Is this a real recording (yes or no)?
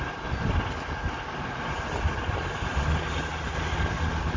yes